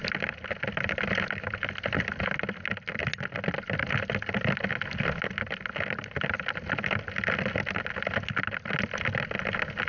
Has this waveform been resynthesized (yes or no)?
no